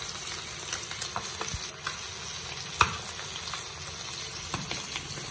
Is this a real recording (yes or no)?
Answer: yes